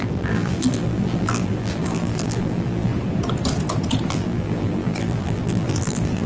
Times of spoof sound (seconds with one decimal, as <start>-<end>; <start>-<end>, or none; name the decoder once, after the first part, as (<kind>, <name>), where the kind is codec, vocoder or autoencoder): 0.0-2.9 (vocoder, BigVGAN v2); 4.1-6.3